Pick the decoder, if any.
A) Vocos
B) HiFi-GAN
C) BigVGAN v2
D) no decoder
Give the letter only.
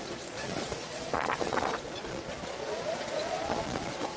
A